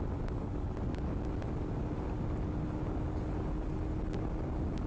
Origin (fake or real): real